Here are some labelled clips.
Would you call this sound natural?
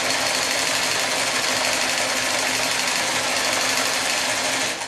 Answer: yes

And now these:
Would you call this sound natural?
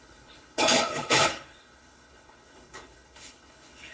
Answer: no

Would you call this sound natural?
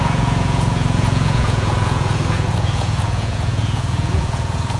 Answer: no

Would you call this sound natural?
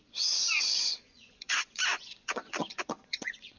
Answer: no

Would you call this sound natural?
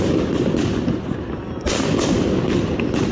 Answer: yes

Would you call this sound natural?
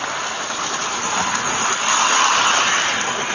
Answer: yes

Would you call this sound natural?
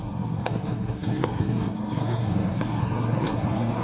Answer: no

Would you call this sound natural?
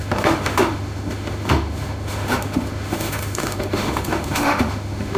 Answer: no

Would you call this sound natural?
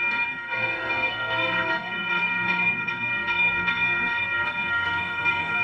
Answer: no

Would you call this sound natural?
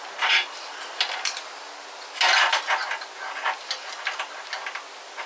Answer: yes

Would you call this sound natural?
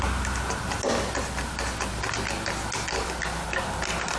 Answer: yes